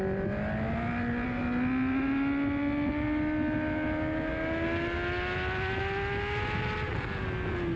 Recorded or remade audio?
recorded